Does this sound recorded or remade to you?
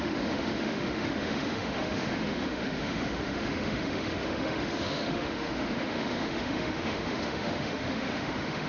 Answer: remade